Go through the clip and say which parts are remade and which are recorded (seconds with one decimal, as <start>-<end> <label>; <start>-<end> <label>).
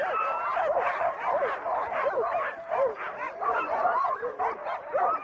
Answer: 0.0-3.2 recorded; 3.2-4.4 remade; 4.4-5.2 recorded